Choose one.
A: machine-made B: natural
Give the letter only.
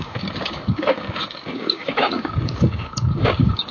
A